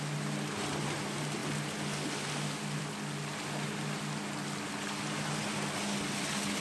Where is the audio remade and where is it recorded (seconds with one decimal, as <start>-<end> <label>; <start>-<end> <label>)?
0.0-6.6 recorded